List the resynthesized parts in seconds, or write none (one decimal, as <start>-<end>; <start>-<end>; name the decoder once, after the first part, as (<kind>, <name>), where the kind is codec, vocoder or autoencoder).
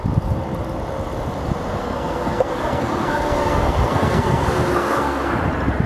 1.8-5.3 (codec, SNAC)